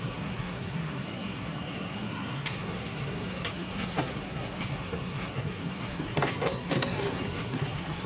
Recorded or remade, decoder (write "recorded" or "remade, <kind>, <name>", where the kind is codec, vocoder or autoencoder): remade, codec, SNAC